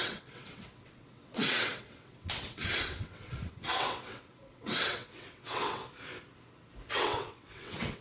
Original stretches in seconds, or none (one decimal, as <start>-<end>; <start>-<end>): 5.8-6.9